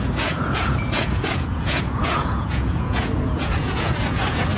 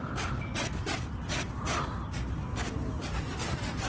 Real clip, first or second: second